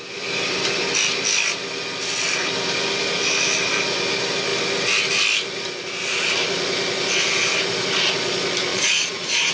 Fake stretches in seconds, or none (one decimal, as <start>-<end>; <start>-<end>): 8.7-9.5

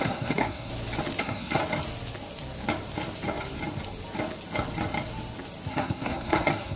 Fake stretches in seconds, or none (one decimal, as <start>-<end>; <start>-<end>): 0.0-0.7; 1.2-1.6; 5.7-6.8

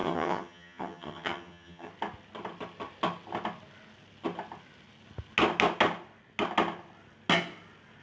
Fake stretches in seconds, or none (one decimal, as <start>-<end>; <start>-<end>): 0.0-1.9

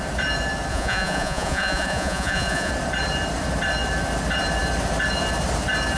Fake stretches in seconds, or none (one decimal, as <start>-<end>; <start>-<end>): 0.7-2.7

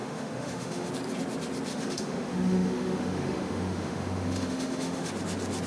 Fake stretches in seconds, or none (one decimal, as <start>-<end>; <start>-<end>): 0.0-0.9; 1.7-5.1

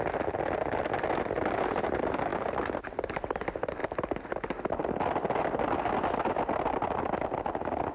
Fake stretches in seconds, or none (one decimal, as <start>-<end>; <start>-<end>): none

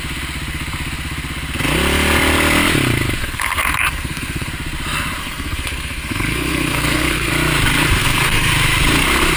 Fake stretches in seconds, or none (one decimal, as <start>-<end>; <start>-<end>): 3.2-4.5; 5.2-7.3; 8.0-8.5

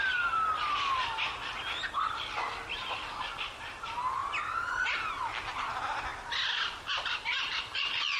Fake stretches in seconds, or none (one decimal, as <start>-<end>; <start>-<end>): 7.3-8.2